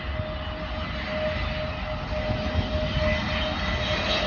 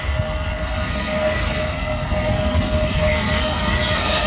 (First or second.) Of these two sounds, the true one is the first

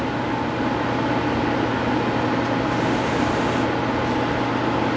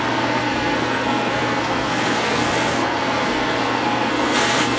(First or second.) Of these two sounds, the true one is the first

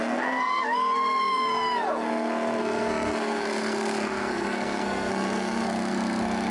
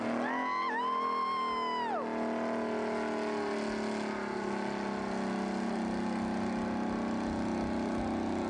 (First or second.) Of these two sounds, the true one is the second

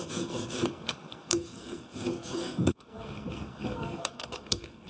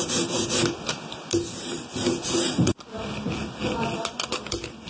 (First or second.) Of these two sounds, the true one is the second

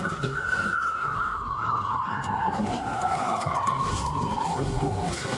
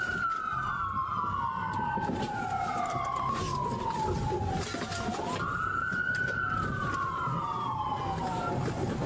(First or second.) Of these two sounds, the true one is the second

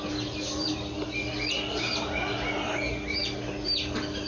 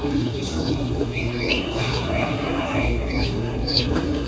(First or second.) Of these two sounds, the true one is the first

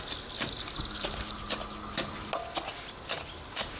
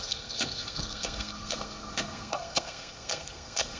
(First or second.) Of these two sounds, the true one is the first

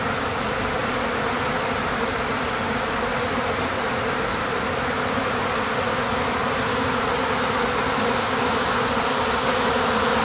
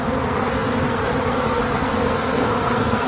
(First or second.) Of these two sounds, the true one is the first